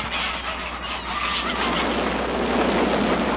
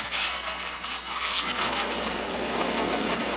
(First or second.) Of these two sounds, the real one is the first